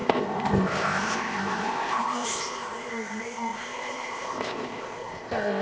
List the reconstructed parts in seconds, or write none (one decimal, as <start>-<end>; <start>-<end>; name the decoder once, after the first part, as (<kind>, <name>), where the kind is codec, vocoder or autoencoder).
0.0-5.6 (codec, ZipCodec)